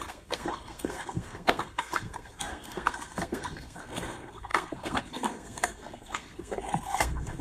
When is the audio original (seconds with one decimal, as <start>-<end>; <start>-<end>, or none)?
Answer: none